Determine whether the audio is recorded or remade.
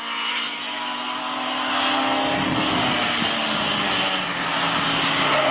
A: recorded